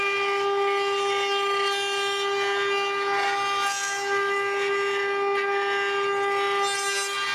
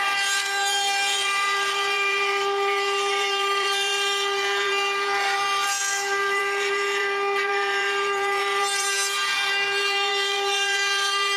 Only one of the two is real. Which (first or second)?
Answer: first